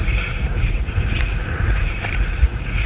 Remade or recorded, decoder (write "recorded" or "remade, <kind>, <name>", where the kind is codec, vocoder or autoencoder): remade, vocoder, Vocos